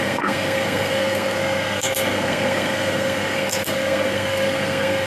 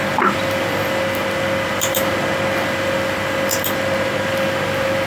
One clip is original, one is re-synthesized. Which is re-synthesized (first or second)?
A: first